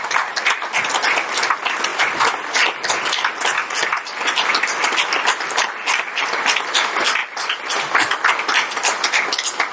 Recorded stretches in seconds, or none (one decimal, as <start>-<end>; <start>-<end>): 0.0-1.9; 6.7-9.7